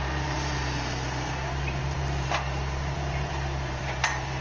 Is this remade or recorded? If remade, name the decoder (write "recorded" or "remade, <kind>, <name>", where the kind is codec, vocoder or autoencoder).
remade, vocoder, BigVGAN v2